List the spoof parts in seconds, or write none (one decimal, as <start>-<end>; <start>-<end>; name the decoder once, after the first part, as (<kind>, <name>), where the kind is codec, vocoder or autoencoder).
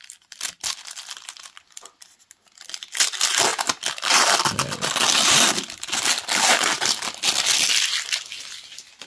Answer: none